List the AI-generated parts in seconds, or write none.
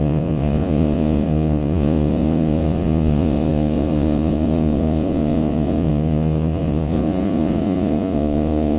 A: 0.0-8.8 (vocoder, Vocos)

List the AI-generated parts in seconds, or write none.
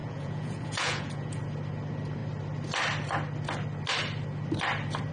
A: 0.0-1.4 (vocoder, Vocos)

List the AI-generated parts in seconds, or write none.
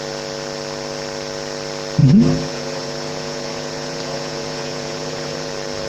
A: 2.0-5.5 (vocoder, Vocos)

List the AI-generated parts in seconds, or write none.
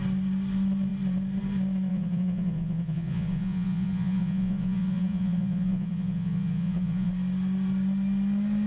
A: 1.9-7.1 (vocoder, Vocos)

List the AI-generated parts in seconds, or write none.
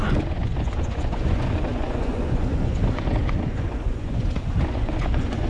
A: 0.0-5.5 (vocoder, Vocos)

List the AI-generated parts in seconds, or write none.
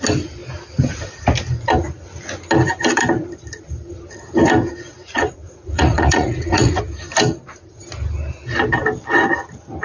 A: 5.0-6.8 (vocoder, Vocos)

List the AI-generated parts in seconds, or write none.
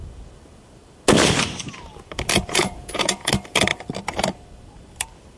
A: 2.3-3.3 (vocoder, Vocos)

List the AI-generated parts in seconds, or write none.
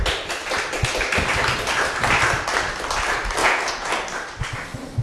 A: 3.4-3.9 (vocoder, Vocos)